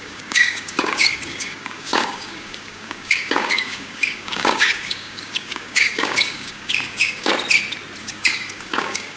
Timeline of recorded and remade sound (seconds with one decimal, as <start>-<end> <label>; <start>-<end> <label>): 0.0-7.3 remade; 7.3-8.0 recorded; 8.0-9.2 remade